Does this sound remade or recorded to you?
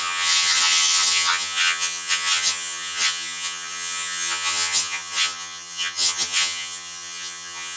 remade